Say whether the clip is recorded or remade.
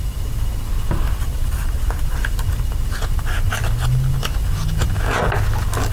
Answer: recorded